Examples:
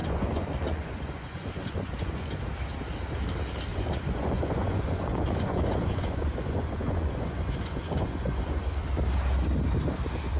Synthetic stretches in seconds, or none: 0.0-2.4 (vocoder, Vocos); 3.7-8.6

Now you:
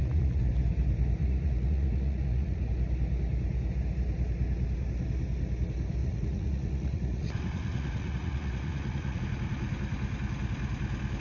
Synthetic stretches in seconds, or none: 0.0-0.5 (vocoder, Vocos); 1.2-2.7; 6.0-9.2

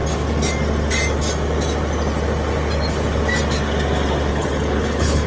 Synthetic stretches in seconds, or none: 4.3-5.3 (codec, HILCodec)

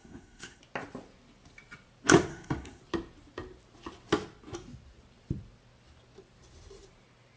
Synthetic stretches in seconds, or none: 0.0-0.6 (codec, SNAC); 2.3-2.8

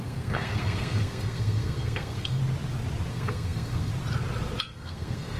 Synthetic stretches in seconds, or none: 0.0-2.4 (codec, SNAC); 3.1-3.9; 4.6-5.4

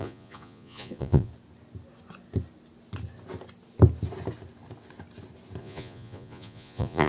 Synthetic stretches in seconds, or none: 0.0-1.3 (vocoder, Vocos); 5.6-7.1